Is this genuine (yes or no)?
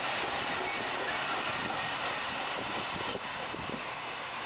no